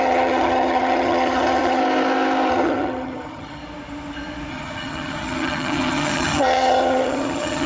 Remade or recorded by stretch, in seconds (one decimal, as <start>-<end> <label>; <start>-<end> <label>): 0.0-1.8 remade; 1.8-2.5 recorded; 2.5-3.6 remade; 3.6-4.5 recorded; 4.5-7.7 remade